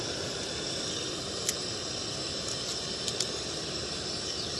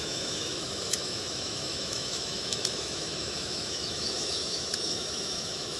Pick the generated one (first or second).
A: second